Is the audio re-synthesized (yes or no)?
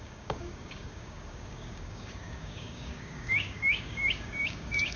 yes